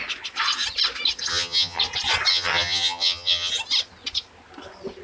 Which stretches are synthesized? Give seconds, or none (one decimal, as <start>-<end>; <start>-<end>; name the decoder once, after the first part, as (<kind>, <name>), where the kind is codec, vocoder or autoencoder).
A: 1.3-1.8 (vocoder, HiFi-GAN); 2.3-3.5